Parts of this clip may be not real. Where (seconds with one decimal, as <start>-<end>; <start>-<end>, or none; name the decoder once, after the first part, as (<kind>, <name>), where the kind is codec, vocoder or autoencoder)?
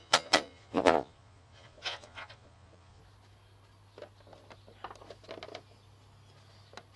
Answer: 0.0-3.0 (vocoder, Vocos)